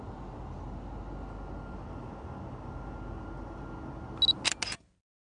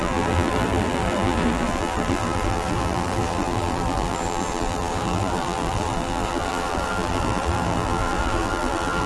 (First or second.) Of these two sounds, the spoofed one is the second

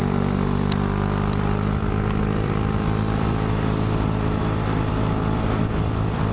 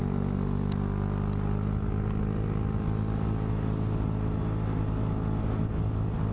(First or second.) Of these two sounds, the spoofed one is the first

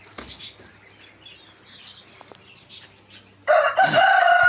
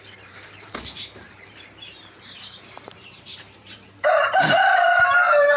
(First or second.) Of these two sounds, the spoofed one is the second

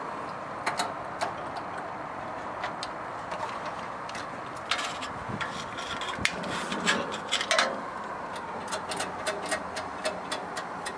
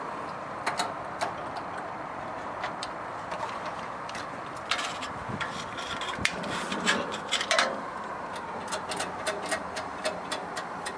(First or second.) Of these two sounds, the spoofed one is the second